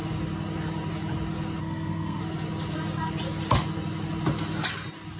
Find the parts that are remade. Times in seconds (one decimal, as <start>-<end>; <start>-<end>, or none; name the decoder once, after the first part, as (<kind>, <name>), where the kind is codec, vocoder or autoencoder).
1.6-2.2 (codec, SNAC)